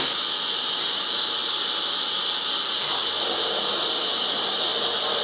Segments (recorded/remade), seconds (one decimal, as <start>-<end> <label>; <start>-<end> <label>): 0.0-5.2 recorded